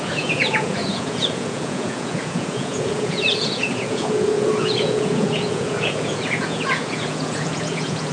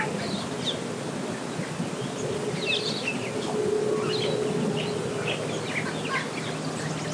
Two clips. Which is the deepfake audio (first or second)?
first